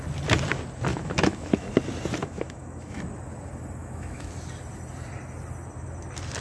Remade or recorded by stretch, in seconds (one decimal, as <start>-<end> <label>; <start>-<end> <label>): 0.0-0.9 recorded; 0.9-1.7 remade; 1.7-2.2 recorded; 2.2-3.0 remade; 3.0-3.8 recorded; 3.8-4.3 remade; 4.3-6.4 recorded